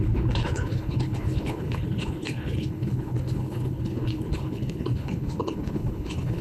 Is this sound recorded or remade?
remade